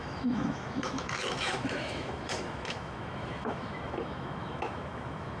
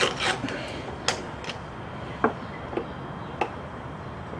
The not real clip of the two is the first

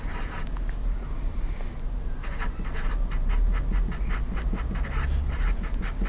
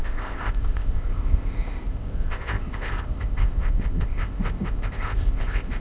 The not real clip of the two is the second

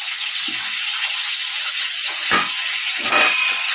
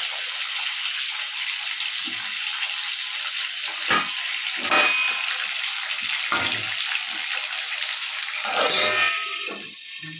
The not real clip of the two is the first